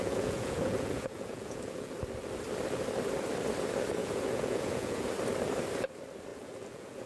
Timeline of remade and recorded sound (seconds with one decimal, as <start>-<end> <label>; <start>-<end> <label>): 0.0-1.9 remade; 1.9-4.0 recorded; 4.0-5.1 remade; 5.1-6.3 recorded; 6.3-7.1 remade